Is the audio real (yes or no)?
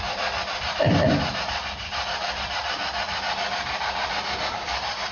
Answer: no